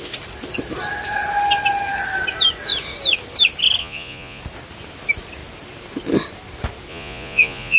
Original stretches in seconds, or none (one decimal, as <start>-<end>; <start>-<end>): 0.0-3.8; 4.4-6.9